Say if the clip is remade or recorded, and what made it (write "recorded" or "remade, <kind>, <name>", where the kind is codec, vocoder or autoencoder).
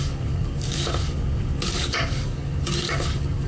remade, codec, DAC